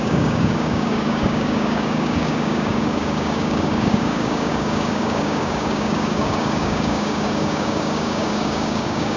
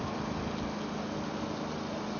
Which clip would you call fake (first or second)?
first